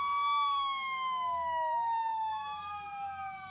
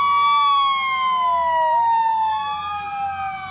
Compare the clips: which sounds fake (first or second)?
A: first